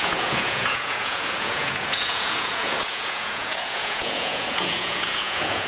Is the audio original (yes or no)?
no